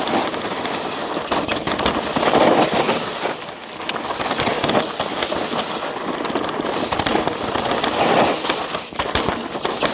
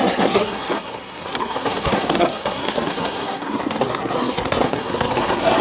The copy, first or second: second